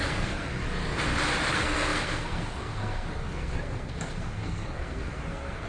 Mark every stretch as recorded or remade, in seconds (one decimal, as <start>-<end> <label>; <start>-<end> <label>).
0.0-0.6 remade; 0.6-1.5 recorded; 1.5-5.7 remade